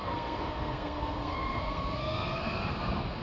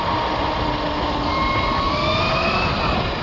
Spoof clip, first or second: first